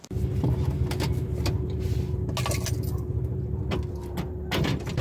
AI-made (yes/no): no